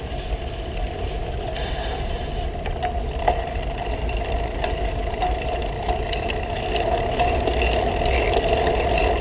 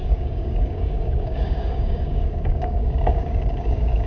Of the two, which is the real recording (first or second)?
first